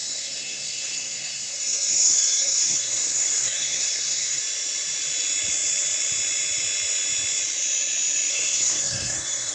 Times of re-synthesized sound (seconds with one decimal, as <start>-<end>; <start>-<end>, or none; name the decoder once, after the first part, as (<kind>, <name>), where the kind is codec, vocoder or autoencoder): 0.0-4.4 (codec, SNAC); 8.3-9.5